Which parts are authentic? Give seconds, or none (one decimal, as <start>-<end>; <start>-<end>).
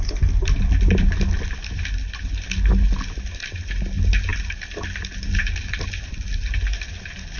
0.0-7.4